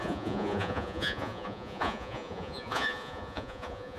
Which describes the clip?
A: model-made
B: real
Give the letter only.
A